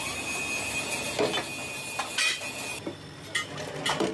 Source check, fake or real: real